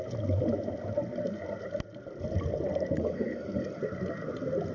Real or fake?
real